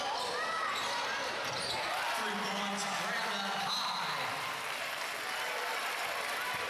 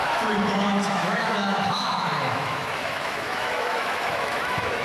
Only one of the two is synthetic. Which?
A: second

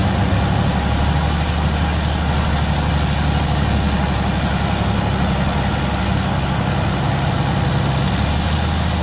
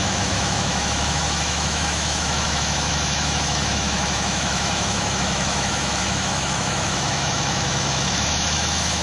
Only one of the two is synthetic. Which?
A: second